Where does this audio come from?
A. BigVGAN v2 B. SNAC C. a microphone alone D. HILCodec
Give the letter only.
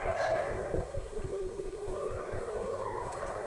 B